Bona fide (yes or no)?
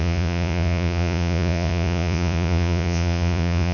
no